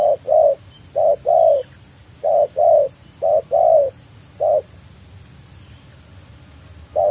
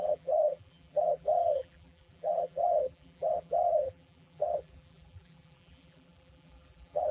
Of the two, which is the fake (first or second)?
second